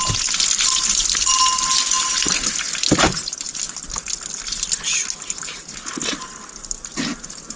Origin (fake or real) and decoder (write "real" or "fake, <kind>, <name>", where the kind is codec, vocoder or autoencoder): real